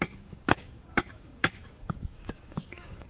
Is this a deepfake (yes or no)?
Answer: yes